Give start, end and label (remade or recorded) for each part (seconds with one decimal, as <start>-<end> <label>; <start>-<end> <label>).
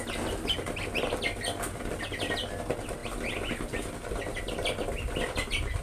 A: 0.0-5.8 recorded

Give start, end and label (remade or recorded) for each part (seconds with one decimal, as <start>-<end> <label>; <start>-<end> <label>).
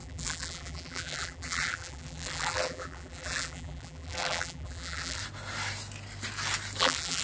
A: 0.0-5.2 remade; 5.2-6.8 recorded; 6.8-7.2 remade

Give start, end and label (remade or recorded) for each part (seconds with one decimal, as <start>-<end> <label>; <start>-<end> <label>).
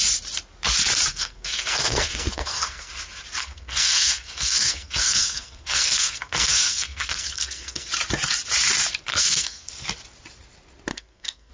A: 0.0-1.1 recorded; 1.1-2.9 remade; 2.9-3.4 recorded; 3.4-7.9 remade; 7.9-9.1 recorded; 9.1-9.7 remade; 9.7-10.9 recorded; 10.9-11.5 remade